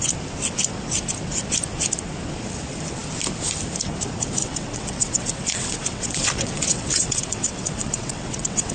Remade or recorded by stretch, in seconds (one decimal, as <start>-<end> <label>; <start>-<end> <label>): 0.0-4.4 recorded; 4.4-8.7 remade